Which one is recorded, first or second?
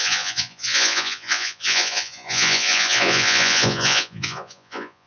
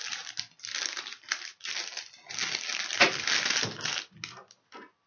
second